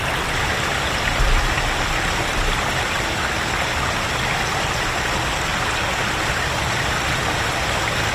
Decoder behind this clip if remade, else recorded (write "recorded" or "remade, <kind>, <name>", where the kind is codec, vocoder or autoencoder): recorded